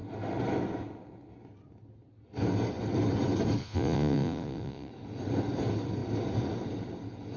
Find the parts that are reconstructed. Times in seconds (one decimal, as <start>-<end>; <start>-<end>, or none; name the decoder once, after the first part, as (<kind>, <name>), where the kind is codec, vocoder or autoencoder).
3.6-4.9 (vocoder, Vocos)